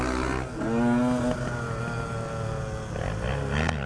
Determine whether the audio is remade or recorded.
recorded